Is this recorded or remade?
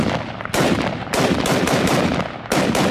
recorded